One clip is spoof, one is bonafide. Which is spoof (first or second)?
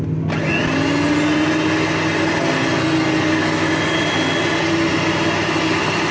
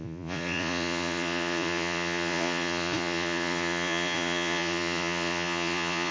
second